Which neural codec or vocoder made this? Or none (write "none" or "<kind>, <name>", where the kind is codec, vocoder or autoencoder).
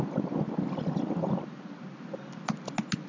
none